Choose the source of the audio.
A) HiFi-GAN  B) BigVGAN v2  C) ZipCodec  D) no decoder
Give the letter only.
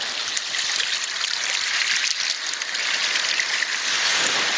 D